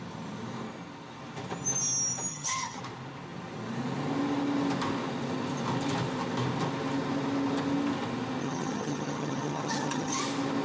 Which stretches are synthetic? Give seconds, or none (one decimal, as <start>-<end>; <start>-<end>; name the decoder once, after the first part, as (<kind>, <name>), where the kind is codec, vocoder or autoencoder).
2.3-2.8 (vocoder, HiFi-GAN); 8.4-10.2